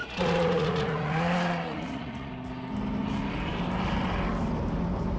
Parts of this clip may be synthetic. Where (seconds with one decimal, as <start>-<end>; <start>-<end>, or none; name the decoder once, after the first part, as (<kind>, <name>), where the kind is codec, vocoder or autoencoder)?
0.0-2.3 (vocoder, Vocos)